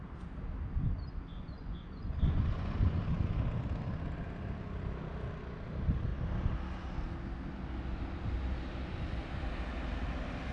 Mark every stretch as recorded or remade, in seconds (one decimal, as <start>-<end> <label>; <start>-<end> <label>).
0.0-1.3 recorded; 1.3-3.0 remade; 3.0-10.5 recorded